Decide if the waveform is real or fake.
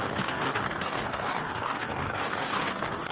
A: fake